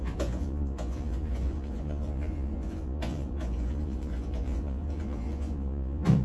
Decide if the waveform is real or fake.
fake